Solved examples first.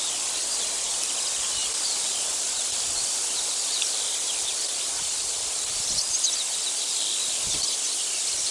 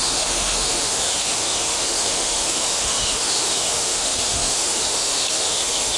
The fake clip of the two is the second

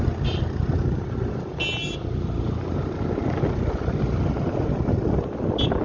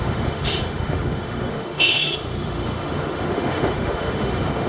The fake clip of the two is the second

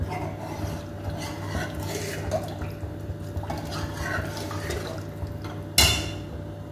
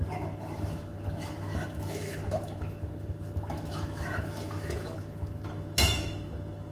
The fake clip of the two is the second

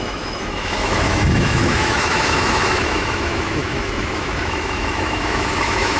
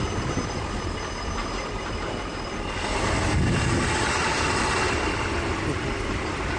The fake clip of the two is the first